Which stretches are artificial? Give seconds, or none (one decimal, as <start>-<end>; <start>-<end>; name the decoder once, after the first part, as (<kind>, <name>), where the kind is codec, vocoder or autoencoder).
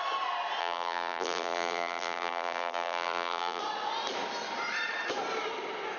0.6-3.6 (vocoder, BigVGAN v2)